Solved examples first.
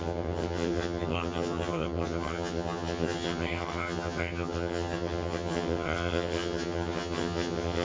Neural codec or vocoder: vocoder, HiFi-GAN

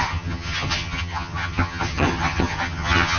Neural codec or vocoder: vocoder, HiFi-GAN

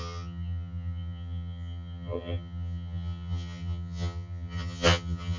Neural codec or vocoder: vocoder, HiFi-GAN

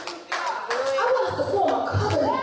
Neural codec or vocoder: none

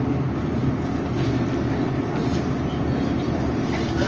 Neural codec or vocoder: none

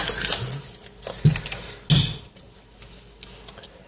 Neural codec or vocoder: none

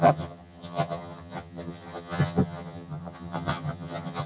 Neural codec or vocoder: vocoder, HiFi-GAN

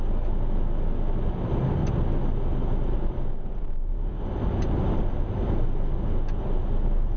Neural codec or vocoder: none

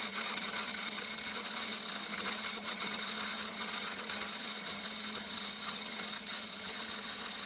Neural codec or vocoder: vocoder, HiFi-GAN